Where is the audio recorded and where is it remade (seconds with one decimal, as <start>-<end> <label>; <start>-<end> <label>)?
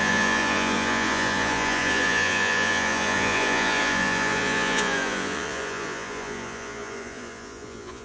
0.0-8.0 remade